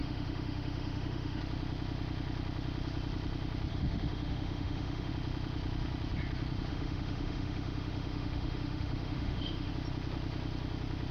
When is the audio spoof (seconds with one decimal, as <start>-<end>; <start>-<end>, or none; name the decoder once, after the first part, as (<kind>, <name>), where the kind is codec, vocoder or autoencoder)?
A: 0.0-1.4 (autoencoder, DAC-VAE); 3.7-5.1; 6.7-9.7